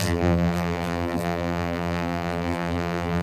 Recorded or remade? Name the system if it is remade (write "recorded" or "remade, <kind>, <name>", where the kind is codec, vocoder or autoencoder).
remade, vocoder, BigVGAN v2